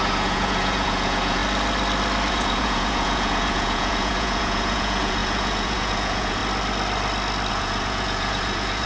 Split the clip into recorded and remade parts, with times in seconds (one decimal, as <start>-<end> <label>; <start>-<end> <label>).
0.0-1.4 remade; 1.4-2.3 recorded; 2.3-6.4 remade; 6.4-7.5 recorded; 7.5-8.9 remade